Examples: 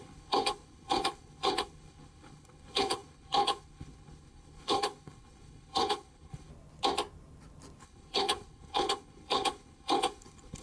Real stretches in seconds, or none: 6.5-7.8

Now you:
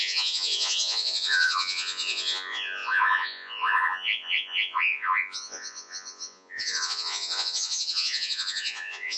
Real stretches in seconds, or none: none

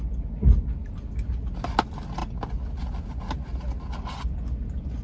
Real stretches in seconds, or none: 0.0-5.0